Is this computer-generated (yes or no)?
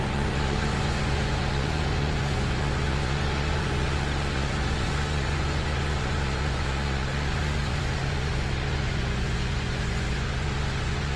yes